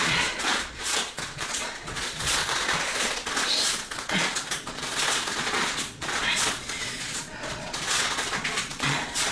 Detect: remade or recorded remade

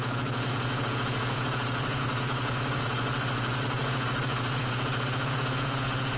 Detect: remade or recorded remade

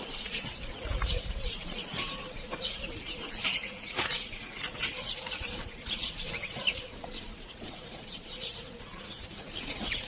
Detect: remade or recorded remade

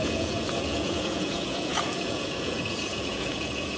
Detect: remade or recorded remade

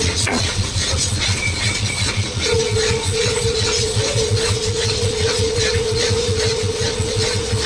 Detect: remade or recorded remade